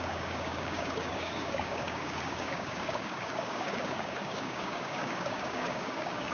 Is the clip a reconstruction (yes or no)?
yes